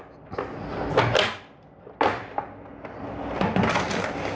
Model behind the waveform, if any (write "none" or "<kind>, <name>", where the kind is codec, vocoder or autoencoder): none